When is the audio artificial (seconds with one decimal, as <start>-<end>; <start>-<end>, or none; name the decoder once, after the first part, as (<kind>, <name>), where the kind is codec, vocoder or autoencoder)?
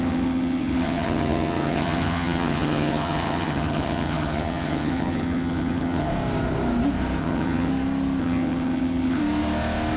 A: 0.0-6.1 (vocoder, HiFi-GAN); 7.2-7.7; 8.2-9.2